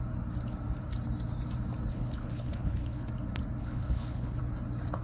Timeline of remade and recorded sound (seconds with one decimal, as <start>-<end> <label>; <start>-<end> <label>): 0.0-1.9 recorded; 1.9-3.1 remade; 3.1-3.6 recorded; 3.6-4.4 remade; 4.4-5.0 recorded